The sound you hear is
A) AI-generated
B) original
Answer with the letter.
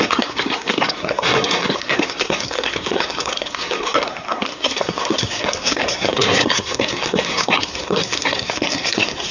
A